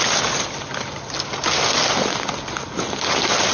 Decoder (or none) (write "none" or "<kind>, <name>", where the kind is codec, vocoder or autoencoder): none